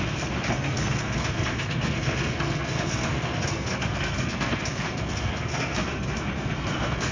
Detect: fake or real fake